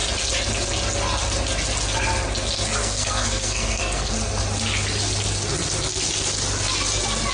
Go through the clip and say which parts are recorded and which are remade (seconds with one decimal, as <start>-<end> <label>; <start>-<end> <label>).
0.0-2.8 recorded; 2.8-4.1 remade; 4.1-7.3 recorded